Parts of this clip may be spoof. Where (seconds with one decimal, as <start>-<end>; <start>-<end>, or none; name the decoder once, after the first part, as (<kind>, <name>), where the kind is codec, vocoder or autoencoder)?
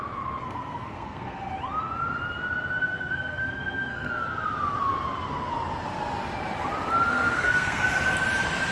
0.4-1.5 (codec, SNAC); 2.8-4.1; 7.1-7.8